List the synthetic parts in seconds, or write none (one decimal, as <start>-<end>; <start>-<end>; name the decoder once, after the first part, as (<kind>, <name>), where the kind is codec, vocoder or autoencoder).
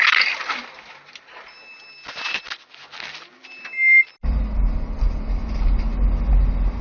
none